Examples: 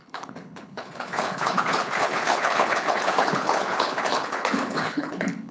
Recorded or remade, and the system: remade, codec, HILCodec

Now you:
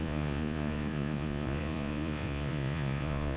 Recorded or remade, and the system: remade, vocoder, Vocos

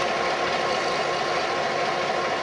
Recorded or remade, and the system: remade, vocoder, BigVGAN v2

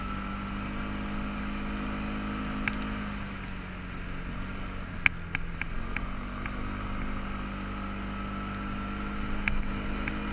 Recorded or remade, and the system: recorded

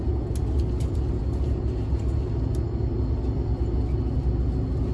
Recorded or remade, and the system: recorded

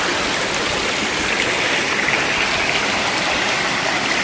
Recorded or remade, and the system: recorded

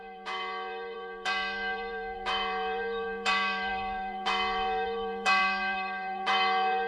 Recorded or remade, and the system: remade, vocoder, BigVGAN v2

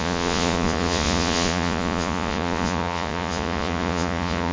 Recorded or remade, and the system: remade, vocoder, Vocos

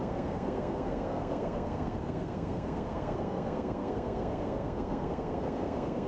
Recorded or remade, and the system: remade, codec, SNAC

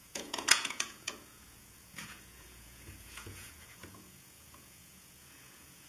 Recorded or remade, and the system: remade, vocoder, Vocos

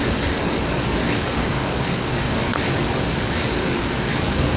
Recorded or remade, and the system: remade, codec, DAC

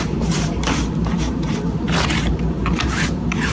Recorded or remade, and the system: remade, vocoder, BigVGAN v2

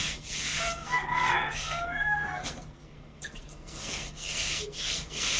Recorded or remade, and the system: remade, codec, SNAC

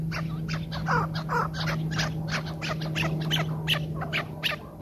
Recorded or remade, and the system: recorded